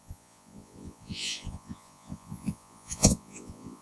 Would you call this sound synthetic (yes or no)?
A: yes